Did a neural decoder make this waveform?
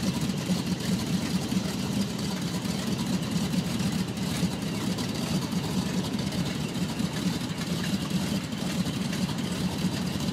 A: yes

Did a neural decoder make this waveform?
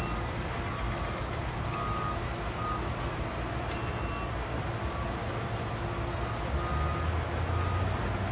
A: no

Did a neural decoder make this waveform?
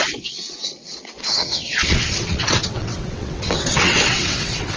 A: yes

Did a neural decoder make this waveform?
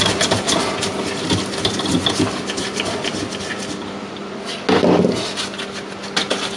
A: no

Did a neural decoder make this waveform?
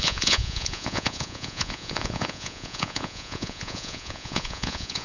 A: yes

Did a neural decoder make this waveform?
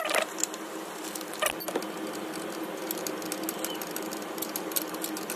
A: no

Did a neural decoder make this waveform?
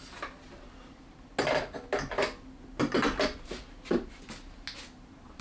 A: no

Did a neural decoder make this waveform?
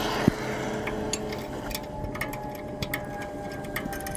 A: no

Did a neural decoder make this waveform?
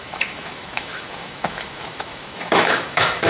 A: yes